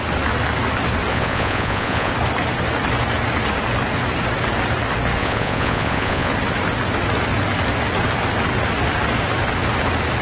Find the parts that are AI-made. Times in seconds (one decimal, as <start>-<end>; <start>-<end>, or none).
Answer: 1.1-2.1; 5.2-6.3